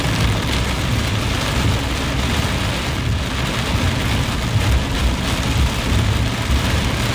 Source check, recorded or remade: recorded